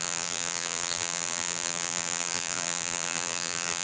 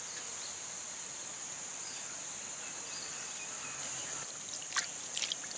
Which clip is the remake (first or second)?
first